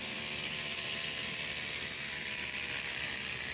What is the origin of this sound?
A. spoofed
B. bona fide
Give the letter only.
B